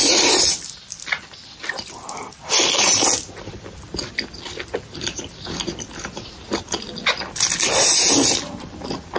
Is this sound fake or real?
fake